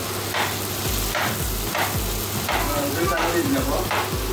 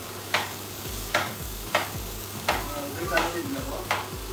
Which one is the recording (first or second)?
first